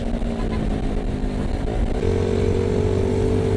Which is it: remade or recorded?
recorded